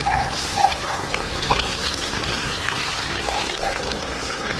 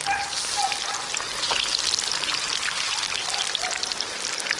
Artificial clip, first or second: first